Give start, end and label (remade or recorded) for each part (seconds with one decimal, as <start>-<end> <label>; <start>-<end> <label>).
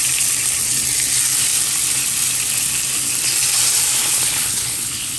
0.0-4.0 recorded; 4.0-5.2 remade